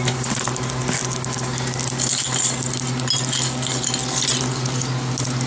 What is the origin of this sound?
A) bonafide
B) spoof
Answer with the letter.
A